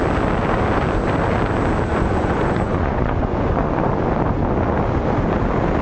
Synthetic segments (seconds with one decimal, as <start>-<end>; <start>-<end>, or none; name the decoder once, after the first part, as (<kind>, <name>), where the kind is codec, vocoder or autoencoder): 1.9-3.9 (vocoder, Vocos)